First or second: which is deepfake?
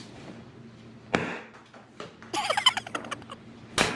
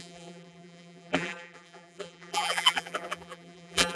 second